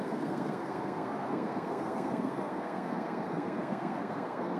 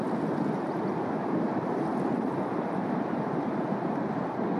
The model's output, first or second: first